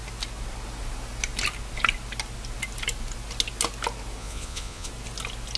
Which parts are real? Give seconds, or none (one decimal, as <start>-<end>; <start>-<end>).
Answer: 0.0-4.2; 4.9-5.6